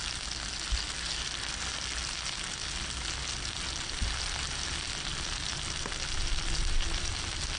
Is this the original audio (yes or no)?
yes